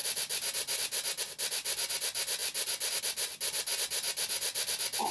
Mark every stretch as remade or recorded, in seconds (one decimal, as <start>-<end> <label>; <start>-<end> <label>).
0.0-5.1 recorded